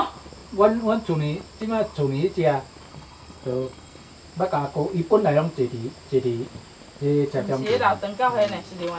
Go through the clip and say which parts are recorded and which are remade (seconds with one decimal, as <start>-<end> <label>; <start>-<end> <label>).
0.0-2.9 recorded; 2.9-4.1 remade; 4.1-9.0 recorded